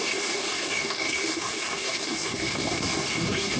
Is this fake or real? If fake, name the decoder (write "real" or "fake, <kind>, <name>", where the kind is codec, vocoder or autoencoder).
fake, codec, DAC